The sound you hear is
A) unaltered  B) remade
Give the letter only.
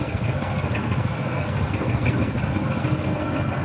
B